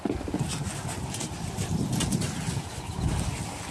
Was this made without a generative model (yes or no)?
yes